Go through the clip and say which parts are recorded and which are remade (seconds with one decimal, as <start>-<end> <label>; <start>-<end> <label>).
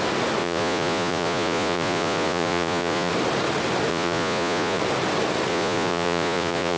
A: 0.0-0.4 recorded; 0.4-3.1 remade; 3.1-3.9 recorded; 3.9-4.8 remade; 4.8-5.5 recorded; 5.5-6.8 remade